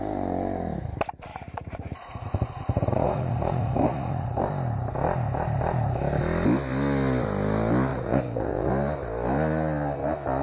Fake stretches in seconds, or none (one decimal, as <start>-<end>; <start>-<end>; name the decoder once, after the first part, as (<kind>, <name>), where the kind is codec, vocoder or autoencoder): 1.3-4.4 (vocoder, Vocos); 7.9-8.7